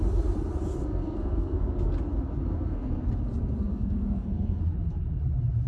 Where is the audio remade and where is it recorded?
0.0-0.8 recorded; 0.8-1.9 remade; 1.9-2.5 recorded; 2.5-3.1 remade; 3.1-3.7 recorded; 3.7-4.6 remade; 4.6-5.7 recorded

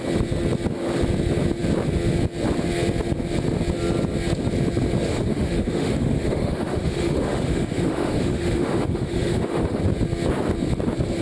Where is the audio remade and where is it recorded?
0.0-5.1 recorded; 5.1-9.8 remade; 9.8-11.2 recorded

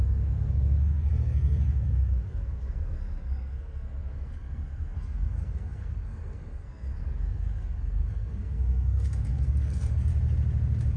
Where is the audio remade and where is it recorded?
0.0-10.1 remade; 10.1-11.0 recorded

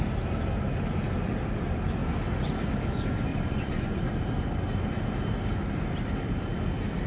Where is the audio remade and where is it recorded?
0.0-3.3 recorded; 3.3-4.0 remade; 4.0-7.1 recorded

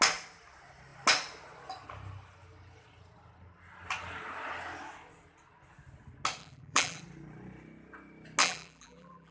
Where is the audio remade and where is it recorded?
0.0-6.4 recorded; 6.4-7.0 remade; 7.0-8.4 recorded; 8.4-9.3 remade